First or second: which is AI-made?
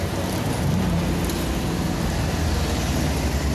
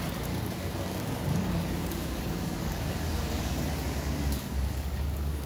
second